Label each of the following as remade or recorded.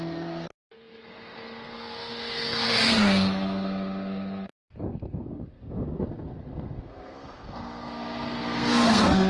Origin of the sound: remade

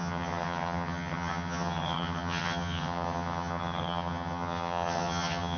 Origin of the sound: remade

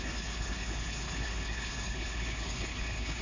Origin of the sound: remade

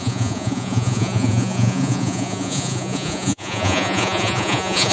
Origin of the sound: remade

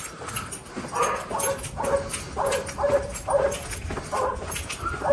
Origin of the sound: recorded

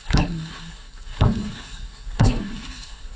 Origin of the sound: remade